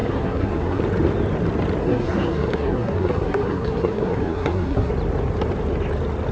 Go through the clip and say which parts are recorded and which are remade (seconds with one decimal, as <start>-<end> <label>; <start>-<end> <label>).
0.0-0.8 remade; 0.8-1.8 recorded; 1.8-4.9 remade; 4.9-6.3 recorded